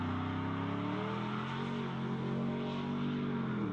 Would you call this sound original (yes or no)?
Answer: yes